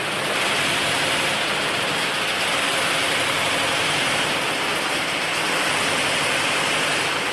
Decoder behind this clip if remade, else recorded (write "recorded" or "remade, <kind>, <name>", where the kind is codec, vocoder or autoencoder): recorded